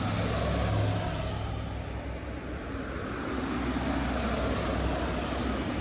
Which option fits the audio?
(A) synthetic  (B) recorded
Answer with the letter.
B